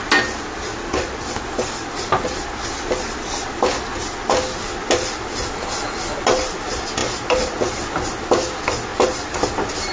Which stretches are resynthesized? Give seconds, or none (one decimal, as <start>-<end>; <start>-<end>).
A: none